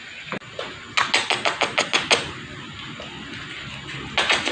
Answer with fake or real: real